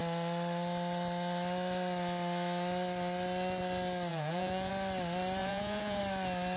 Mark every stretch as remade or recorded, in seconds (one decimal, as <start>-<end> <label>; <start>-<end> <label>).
0.0-4.1 recorded; 4.1-4.7 remade; 4.7-5.4 recorded; 5.4-6.0 remade; 6.0-6.6 recorded